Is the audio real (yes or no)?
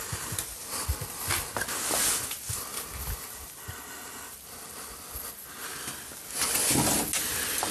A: yes